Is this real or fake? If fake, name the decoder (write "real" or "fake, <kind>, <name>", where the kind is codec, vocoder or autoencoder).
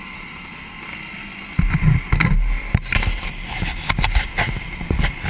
real